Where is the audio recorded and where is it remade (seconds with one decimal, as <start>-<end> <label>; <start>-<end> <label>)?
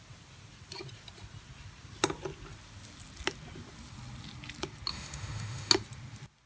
0.0-4.9 recorded; 4.9-5.7 remade; 5.7-6.5 recorded